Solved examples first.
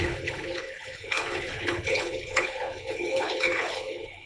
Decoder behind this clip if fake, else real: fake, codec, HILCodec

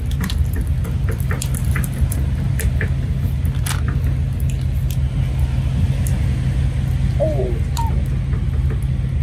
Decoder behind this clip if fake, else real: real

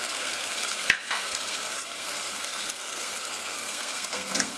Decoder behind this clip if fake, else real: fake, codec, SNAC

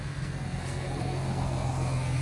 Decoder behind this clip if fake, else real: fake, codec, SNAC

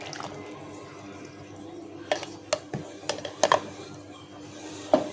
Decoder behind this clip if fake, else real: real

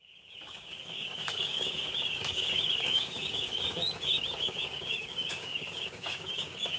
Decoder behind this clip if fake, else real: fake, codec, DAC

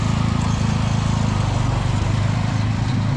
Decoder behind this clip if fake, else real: real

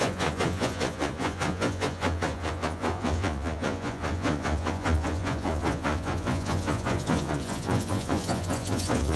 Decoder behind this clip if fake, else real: fake, vocoder, Vocos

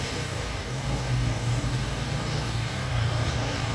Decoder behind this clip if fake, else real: fake, codec, DAC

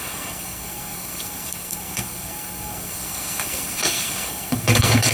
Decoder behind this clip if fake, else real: fake, codec, SNAC